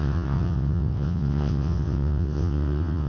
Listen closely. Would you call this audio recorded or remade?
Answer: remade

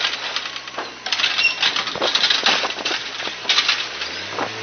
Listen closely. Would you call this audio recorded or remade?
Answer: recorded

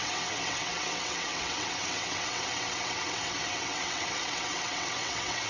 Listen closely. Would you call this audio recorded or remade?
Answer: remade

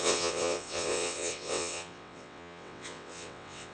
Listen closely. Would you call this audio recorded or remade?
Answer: remade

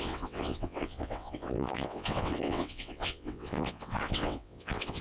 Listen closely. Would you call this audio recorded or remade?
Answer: remade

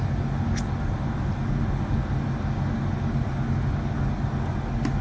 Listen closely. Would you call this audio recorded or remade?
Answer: recorded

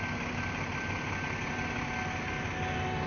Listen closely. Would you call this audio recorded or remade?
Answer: recorded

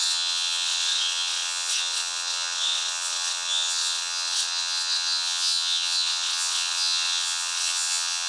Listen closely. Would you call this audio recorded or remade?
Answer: remade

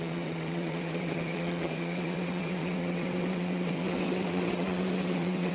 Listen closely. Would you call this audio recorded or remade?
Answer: remade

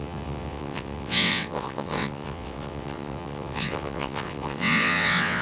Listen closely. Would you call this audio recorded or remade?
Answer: remade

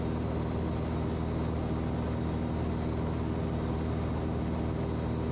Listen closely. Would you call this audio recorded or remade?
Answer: recorded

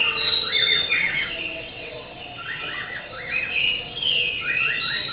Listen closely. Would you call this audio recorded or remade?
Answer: remade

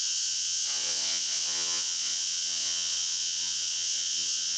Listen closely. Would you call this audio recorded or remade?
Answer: remade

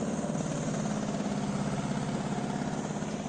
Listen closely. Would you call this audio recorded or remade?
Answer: recorded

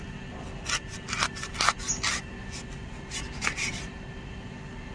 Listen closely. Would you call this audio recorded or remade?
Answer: recorded